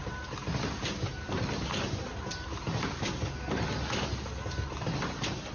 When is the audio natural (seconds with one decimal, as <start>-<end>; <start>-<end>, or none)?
0.0-5.5